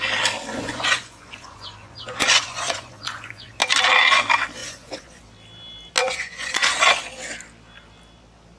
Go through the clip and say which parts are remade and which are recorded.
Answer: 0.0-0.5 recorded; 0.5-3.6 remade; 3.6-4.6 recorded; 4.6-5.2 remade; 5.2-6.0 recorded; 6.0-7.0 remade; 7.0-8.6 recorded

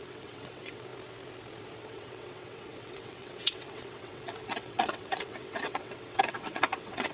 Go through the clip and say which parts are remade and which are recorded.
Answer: 0.0-0.9 remade; 0.9-1.8 recorded; 1.8-7.1 remade

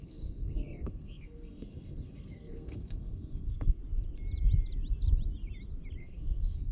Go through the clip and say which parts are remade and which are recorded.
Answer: 0.0-3.8 remade; 3.8-6.0 recorded; 6.0-6.7 remade

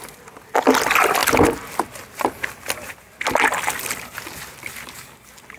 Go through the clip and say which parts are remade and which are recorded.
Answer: 0.0-5.6 recorded